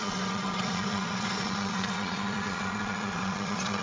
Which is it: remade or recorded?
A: remade